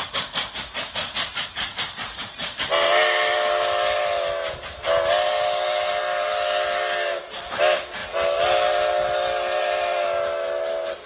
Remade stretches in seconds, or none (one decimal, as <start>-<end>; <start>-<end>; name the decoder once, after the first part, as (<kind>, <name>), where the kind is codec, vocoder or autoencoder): none